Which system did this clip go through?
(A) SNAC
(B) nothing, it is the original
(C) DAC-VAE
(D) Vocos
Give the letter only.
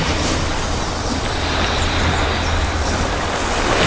B